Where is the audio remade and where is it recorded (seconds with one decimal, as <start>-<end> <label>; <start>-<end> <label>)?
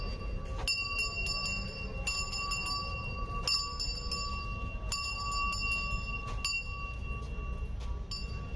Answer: 0.0-8.6 recorded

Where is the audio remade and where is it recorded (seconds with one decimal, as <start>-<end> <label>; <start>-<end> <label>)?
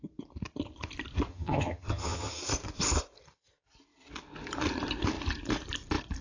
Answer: 0.0-1.3 recorded; 1.3-2.4 remade; 2.4-6.2 recorded